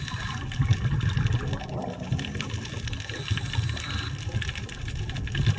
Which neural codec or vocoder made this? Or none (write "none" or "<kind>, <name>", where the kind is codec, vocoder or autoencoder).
none